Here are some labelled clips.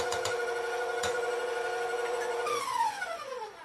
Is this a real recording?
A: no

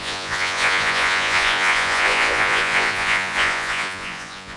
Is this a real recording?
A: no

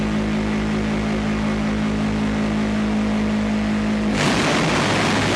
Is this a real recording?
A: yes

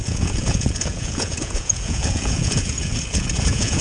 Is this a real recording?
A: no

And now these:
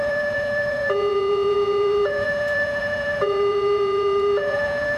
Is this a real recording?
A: no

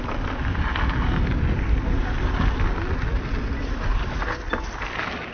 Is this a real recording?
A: yes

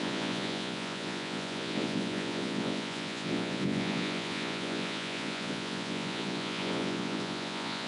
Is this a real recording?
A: no